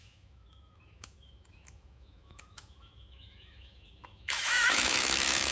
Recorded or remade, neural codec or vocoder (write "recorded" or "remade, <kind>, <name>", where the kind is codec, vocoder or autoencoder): remade, autoencoder, DAC-VAE